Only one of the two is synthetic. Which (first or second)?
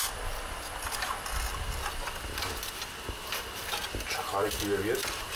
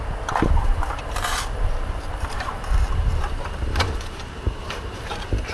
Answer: second